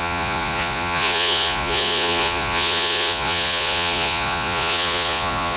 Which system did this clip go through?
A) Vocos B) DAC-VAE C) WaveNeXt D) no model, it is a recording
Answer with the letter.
A